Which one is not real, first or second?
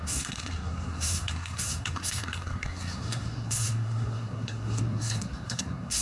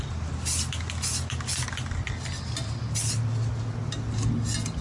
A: first